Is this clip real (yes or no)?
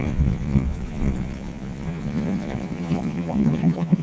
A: no